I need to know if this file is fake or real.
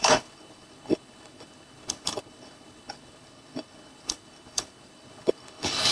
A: fake